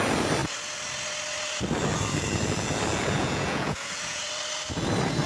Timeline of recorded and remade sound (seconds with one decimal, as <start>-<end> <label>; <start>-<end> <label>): 0.0-3.2 recorded; 3.2-4.2 remade; 4.2-5.3 recorded